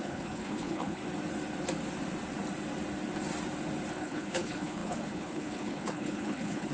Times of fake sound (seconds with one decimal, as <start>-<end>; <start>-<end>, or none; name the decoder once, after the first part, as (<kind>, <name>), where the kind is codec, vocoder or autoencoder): 0.0-1.0 (codec, HILCodec); 3.9-6.7